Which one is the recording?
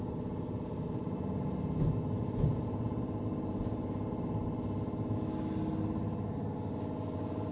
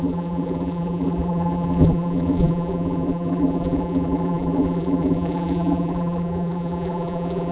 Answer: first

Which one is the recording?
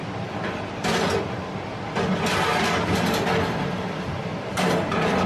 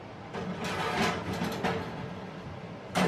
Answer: second